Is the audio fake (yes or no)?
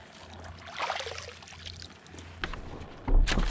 no